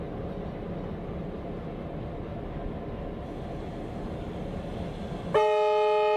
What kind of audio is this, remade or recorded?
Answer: recorded